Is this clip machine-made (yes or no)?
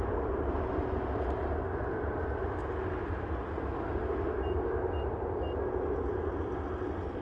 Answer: no